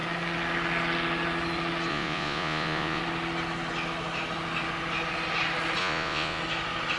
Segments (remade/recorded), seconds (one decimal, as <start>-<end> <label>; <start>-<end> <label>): 0.0-1.9 recorded; 1.9-3.0 remade; 3.0-5.8 recorded; 5.8-6.4 remade; 6.4-7.0 recorded